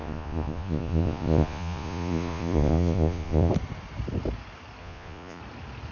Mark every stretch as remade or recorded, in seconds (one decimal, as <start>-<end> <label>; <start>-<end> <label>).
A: 0.0-3.5 remade; 3.5-4.8 recorded; 4.8-5.4 remade; 5.4-5.9 recorded